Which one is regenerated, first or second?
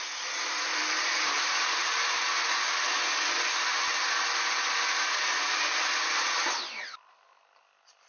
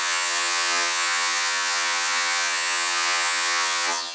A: second